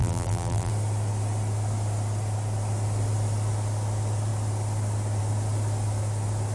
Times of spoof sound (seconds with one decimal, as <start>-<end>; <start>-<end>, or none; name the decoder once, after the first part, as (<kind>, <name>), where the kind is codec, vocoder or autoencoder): 0.0-0.7 (vocoder, BigVGAN v2)